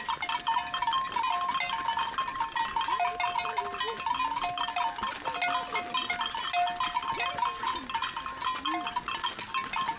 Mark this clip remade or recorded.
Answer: recorded